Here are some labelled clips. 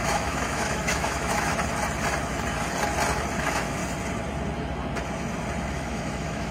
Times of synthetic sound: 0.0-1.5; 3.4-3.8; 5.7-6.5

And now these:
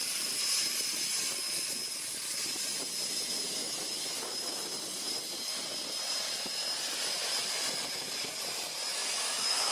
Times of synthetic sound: 3.6-4.2; 8.9-9.7

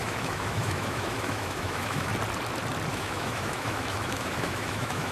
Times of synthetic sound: 0.0-2.1; 2.9-5.1

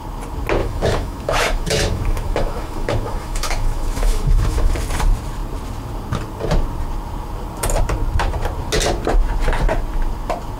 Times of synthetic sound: 0.6-4.7

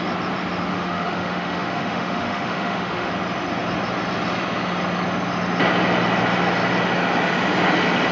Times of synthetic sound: 0.7-3.1

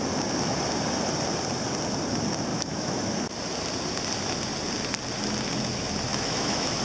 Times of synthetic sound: 2.5-3.0; 6.1-6.8

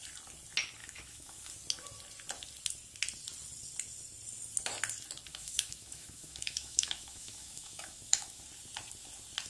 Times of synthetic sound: 0.8-1.5; 5.3-8.4